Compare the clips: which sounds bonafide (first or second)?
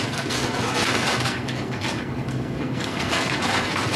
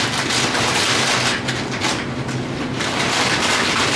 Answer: second